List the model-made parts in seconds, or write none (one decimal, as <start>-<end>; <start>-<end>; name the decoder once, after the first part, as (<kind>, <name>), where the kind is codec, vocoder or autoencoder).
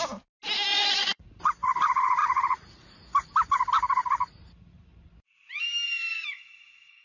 0.7-1.4 (vocoder, Vocos); 2.2-3.0